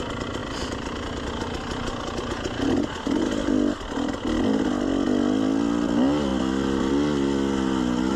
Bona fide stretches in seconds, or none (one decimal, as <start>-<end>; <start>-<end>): 0.0-8.2